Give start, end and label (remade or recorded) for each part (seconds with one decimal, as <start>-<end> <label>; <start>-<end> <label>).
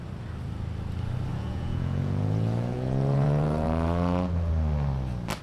0.0-1.3 recorded; 1.3-4.5 remade; 4.5-5.4 recorded